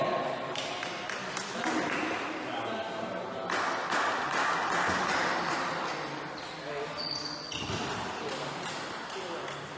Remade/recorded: recorded